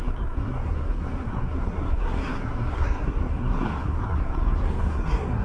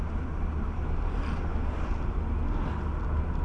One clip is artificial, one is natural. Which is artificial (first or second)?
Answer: first